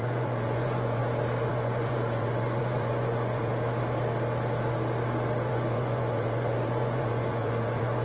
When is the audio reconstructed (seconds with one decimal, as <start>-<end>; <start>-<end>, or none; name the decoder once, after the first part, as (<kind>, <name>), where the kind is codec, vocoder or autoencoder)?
0.0-1.0 (vocoder, Vocos); 1.5-3.5; 5.5-8.0